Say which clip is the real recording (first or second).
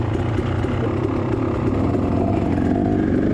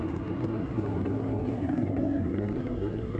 first